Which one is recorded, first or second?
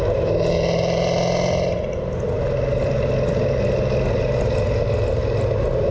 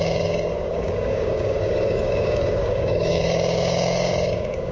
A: first